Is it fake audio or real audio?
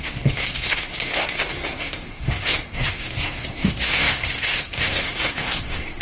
fake